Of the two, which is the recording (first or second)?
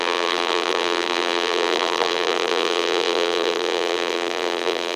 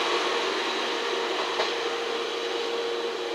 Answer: second